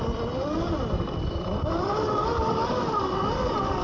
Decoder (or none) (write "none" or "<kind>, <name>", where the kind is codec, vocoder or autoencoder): none